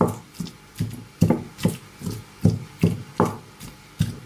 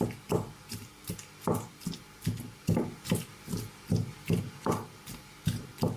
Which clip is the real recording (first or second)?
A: first